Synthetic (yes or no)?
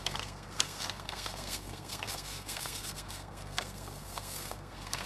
yes